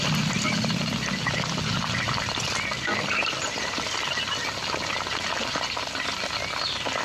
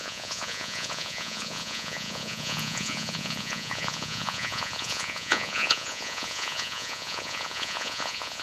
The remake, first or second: second